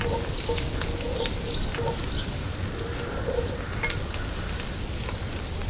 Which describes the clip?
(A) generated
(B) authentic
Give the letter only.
B